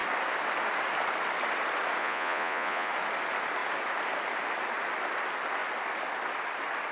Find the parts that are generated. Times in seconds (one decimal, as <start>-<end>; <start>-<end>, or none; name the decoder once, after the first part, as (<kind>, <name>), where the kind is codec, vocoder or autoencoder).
2.0-2.9 (vocoder, Vocos)